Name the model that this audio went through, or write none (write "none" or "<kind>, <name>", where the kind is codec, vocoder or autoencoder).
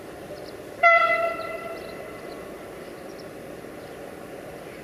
vocoder, BigVGAN v2